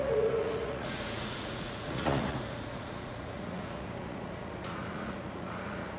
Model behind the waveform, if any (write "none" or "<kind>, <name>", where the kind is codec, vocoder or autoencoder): vocoder, Vocos